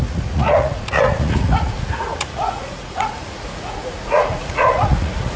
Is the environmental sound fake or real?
fake